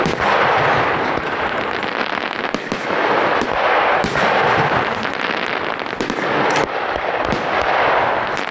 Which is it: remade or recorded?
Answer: recorded